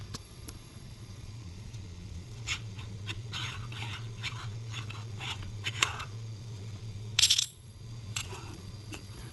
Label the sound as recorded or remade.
remade